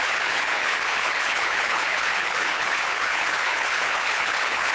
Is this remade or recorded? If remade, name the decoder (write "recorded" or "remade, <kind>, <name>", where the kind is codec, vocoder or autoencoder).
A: remade, codec, HILCodec